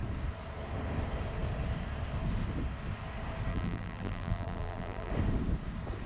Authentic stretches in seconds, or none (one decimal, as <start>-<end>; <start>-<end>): 0.0-3.5; 5.1-6.1

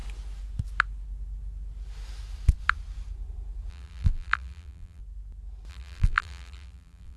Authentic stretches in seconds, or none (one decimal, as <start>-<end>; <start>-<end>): 0.0-3.7; 5.0-5.7

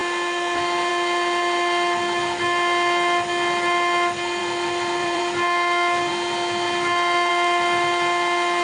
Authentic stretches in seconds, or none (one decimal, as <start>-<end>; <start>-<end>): 0.0-4.4; 5.2-8.6

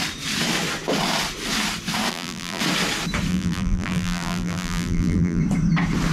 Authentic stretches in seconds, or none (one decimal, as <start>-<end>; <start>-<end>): 0.0-2.1; 2.6-3.3; 5.4-6.1

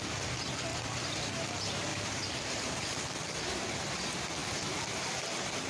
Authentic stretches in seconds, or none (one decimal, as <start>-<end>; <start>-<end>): 0.0-0.7; 1.3-1.9; 4.0-4.4; 5.1-5.7

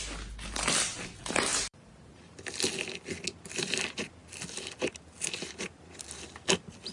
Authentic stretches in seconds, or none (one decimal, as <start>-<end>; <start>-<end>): 0.0-1.5; 2.5-6.9